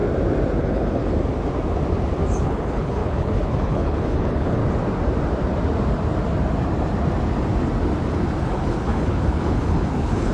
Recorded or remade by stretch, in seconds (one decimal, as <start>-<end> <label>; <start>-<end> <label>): 0.0-0.6 recorded; 0.6-1.0 remade; 1.0-2.4 recorded; 2.4-4.6 remade; 4.6-8.4 recorded; 8.4-10.3 remade